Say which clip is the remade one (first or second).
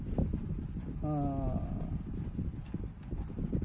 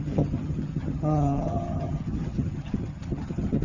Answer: second